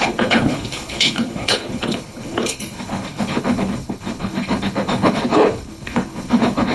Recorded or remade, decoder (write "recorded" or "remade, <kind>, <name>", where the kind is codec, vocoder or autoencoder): remade, codec, HILCodec